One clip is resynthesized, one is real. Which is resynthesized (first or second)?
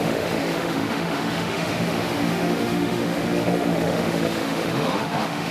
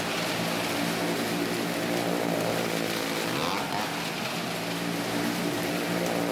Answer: first